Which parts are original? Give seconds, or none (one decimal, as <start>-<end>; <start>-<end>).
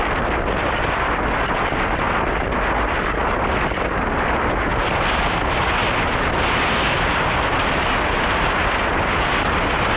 0.0-10.0